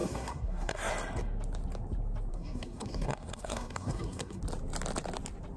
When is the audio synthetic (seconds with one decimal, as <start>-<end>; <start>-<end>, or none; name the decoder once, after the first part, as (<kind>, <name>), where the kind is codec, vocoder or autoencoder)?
0.0-0.9 (codec, SNAC); 2.3-4.4